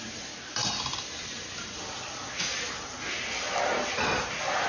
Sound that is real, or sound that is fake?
real